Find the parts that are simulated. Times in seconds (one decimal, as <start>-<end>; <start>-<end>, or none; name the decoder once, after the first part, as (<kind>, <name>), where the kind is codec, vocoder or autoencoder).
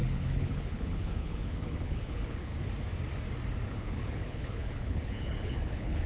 0.0-2.5 (codec, HILCodec); 3.7-6.1